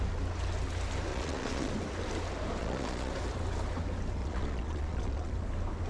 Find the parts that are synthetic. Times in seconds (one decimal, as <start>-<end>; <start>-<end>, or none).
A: 1.1-1.7; 2.6-3.1; 4.2-5.3